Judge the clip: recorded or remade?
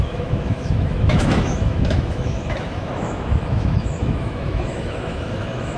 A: remade